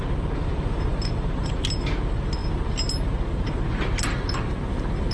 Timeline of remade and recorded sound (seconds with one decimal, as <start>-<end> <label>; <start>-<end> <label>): 0.0-5.1 recorded